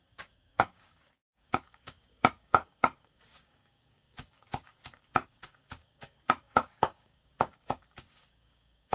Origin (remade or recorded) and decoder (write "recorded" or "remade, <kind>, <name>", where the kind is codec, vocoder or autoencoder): remade, codec, DAC